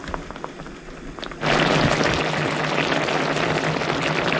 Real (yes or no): yes